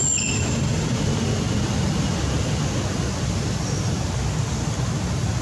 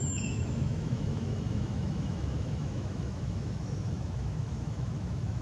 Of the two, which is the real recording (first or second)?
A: first